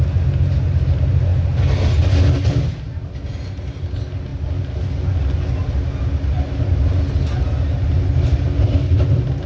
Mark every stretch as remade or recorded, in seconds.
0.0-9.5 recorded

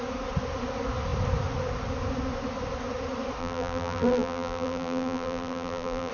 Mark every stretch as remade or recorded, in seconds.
0.0-3.4 recorded; 3.4-6.1 remade

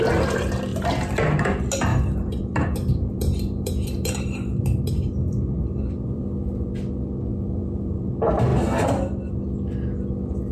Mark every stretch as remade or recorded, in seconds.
0.0-1.9 recorded; 1.9-6.2 remade; 6.2-7.3 recorded; 7.3-8.1 remade; 8.1-10.5 recorded